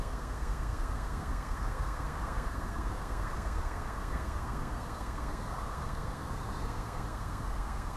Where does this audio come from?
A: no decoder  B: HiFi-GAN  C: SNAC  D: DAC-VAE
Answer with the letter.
C